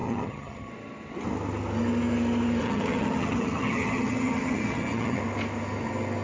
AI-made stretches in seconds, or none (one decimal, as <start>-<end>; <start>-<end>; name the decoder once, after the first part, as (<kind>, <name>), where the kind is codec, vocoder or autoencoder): 0.0-0.7 (vocoder, HiFi-GAN); 2.6-5.2